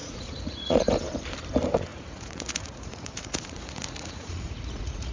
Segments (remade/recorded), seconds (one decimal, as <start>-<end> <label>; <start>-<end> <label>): 0.0-0.9 remade; 0.9-1.9 recorded; 1.9-5.1 remade